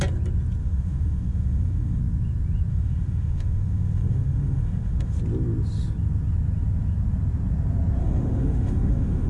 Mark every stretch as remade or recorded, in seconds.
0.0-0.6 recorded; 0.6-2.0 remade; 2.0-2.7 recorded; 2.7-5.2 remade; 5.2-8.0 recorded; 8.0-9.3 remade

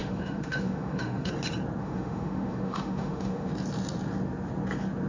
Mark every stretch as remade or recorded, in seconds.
0.0-1.3 remade; 1.3-1.8 recorded; 1.8-3.5 remade; 3.5-5.1 recorded